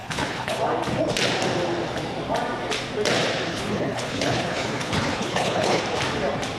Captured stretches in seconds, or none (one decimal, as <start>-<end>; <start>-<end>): 0.6-3.5; 5.8-6.6